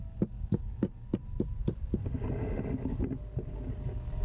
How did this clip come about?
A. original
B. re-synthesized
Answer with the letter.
A